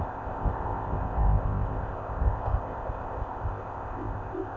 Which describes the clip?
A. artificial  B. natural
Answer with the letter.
A